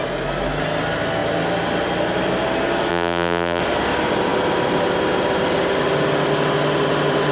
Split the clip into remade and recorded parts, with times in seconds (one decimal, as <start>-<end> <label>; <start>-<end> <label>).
0.0-2.9 recorded; 2.9-3.6 remade; 3.6-7.3 recorded